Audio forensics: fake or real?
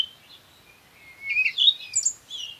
real